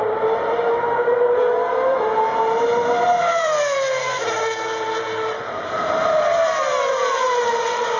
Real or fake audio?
fake